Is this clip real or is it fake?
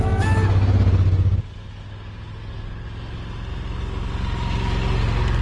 real